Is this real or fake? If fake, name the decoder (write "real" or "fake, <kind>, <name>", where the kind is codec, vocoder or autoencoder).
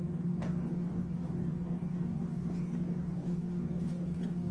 fake, codec, DAC